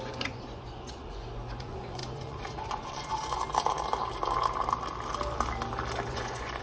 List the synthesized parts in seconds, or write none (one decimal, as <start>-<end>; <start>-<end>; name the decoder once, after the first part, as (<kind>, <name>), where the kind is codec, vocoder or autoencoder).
0.0-3.4 (vocoder, Vocos); 6.1-6.6